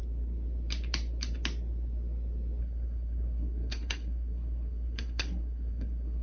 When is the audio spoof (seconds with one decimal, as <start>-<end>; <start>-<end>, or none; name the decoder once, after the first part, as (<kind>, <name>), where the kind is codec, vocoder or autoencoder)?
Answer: 2.6-6.2 (codec, SNAC)